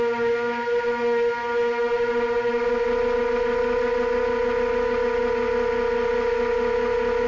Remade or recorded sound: recorded